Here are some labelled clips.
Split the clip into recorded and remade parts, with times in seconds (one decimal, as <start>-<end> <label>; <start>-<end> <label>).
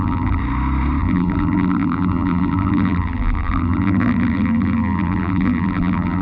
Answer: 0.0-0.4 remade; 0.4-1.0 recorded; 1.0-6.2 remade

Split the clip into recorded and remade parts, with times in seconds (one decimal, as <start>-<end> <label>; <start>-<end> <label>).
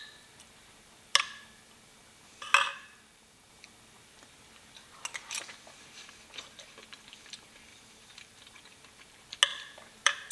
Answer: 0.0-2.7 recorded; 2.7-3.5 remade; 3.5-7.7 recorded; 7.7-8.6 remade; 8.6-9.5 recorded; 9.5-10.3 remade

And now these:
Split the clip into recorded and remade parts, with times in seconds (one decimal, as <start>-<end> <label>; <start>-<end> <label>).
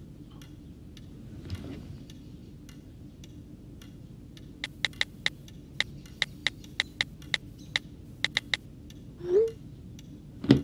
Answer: 0.0-10.6 recorded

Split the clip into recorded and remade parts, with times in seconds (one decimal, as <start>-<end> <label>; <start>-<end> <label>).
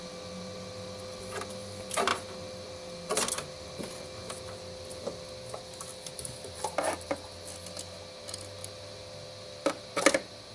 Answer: 0.0-8.6 recorded; 8.6-10.5 remade